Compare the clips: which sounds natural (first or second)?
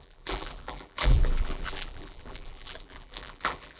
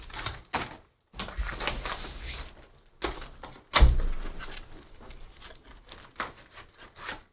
second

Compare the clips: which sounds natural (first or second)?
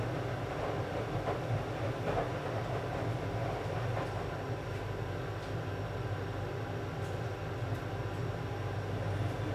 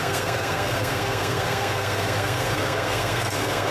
first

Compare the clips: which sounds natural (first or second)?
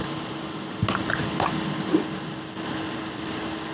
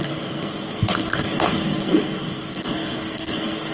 first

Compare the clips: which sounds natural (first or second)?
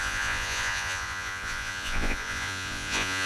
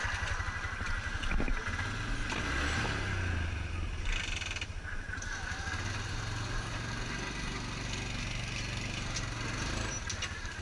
second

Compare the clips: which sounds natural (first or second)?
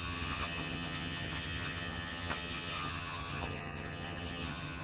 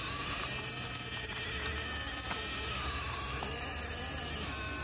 second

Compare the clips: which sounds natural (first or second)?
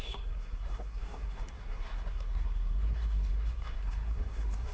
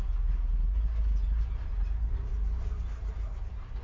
second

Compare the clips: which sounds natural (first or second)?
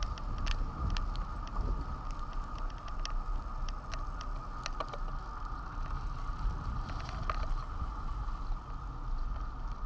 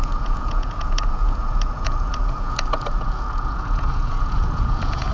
first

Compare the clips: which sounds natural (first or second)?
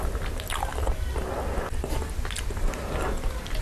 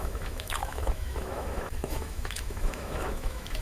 first